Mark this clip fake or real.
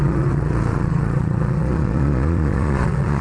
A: fake